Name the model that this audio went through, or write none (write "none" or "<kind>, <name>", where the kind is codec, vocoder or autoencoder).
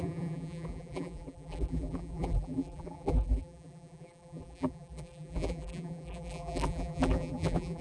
vocoder, BigVGAN v2